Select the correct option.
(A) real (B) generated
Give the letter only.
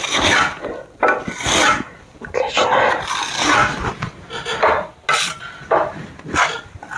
A